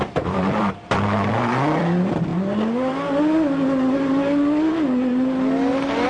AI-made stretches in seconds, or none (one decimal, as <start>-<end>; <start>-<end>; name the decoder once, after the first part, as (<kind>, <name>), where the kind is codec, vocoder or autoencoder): 0.0-2.3 (vocoder, BigVGAN v2)